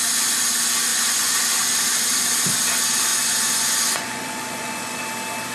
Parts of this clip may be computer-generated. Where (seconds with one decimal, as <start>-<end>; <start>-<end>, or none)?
0.9-1.5; 3.1-5.0